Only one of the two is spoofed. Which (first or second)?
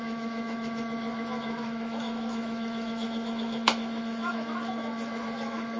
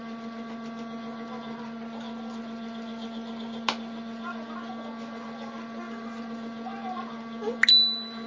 first